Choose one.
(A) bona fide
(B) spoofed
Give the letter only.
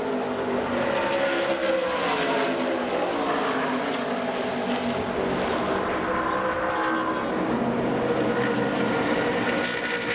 A